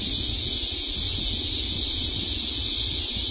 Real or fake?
real